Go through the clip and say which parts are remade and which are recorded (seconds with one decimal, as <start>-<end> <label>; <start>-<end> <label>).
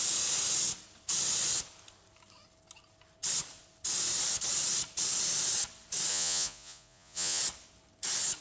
0.0-6.1 recorded; 6.1-7.4 remade; 7.4-8.4 recorded